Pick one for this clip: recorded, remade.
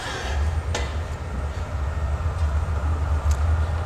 recorded